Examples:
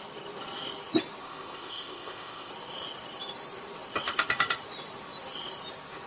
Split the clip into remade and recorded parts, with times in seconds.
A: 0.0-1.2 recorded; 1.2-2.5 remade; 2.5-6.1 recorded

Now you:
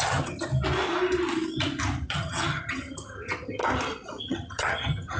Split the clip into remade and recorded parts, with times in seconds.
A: 0.0-0.5 remade; 0.5-2.1 recorded; 2.1-3.6 remade; 3.6-4.2 recorded; 4.2-5.2 remade

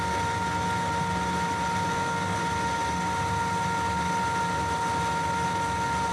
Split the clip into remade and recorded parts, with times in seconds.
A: 0.0-1.9 recorded; 1.9-2.4 remade; 2.4-6.1 recorded

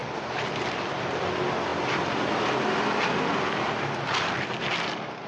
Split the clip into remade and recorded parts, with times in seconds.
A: 0.0-5.3 recorded